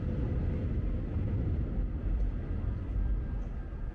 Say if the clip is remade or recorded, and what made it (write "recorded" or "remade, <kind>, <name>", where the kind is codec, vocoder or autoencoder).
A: recorded